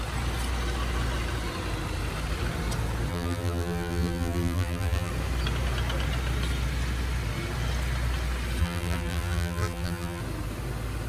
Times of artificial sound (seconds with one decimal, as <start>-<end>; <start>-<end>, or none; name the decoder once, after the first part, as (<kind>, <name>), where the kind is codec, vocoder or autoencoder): 3.1-5.1 (vocoder, BigVGAN v2); 8.6-10.2